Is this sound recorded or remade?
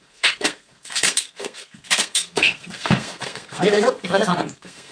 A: remade